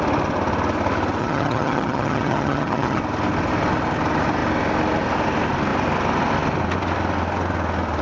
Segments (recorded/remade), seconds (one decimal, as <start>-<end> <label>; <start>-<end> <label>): 0.0-1.2 recorded; 1.2-3.0 remade; 3.0-8.0 recorded